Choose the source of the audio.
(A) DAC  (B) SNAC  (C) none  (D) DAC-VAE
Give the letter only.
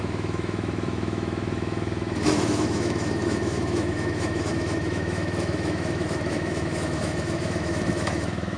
D